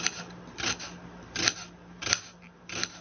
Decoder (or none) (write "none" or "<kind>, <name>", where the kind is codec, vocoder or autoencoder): none